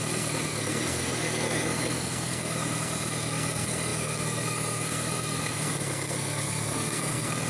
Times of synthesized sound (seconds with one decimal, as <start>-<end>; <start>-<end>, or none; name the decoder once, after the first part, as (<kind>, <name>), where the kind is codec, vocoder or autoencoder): 0.0-7.5 (codec, SNAC)